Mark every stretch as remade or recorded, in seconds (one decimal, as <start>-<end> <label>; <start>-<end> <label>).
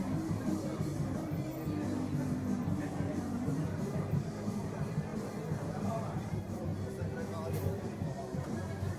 0.0-0.9 remade; 0.9-2.8 recorded; 2.8-5.1 remade; 5.1-5.6 recorded; 5.6-6.7 remade; 6.7-7.5 recorded; 7.5-9.0 remade